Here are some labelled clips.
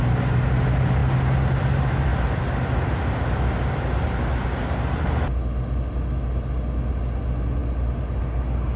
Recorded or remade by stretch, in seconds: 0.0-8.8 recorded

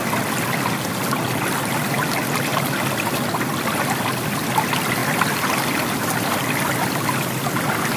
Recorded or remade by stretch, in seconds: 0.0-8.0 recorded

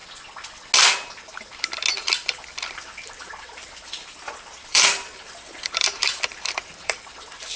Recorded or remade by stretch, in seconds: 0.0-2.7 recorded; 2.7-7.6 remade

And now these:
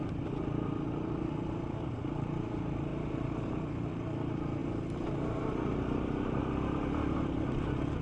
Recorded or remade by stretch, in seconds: 0.0-2.9 recorded; 2.9-3.5 remade; 3.5-4.6 recorded; 4.6-6.4 remade; 6.4-8.0 recorded

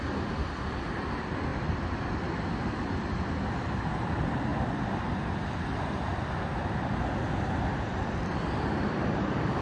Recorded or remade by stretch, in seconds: 0.0-1.5 remade; 1.5-3.9 recorded; 3.9-4.5 remade; 4.5-5.1 recorded; 5.1-6.1 remade; 6.1-8.5 recorded; 8.5-9.6 remade